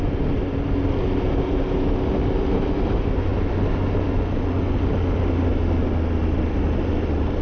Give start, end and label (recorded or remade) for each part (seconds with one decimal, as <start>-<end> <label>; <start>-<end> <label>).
0.0-7.4 recorded

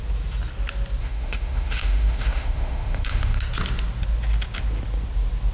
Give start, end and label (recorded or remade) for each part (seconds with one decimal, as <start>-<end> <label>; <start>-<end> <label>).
0.0-1.0 recorded; 1.0-3.4 remade; 3.4-5.5 recorded

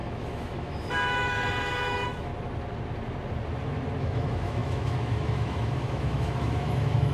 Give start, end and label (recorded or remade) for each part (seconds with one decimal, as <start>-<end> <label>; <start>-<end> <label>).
0.0-2.3 remade; 2.3-4.0 recorded; 4.0-7.1 remade

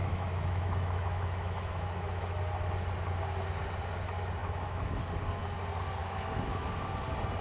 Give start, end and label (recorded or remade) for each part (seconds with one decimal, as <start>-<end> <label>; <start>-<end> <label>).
0.0-2.4 remade; 2.4-4.4 recorded; 4.4-5.0 remade; 5.0-6.0 recorded; 6.0-6.7 remade; 6.7-7.4 recorded

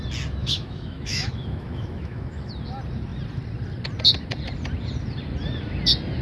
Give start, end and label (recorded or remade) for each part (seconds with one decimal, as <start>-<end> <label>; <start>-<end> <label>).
0.0-0.4 recorded; 0.4-2.5 remade; 2.5-6.2 recorded

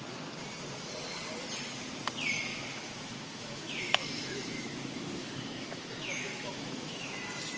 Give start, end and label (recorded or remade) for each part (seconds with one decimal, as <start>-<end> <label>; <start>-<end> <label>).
0.0-2.5 recorded; 2.5-7.1 remade; 7.1-7.6 recorded